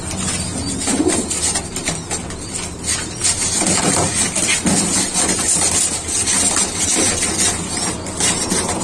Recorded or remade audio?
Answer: recorded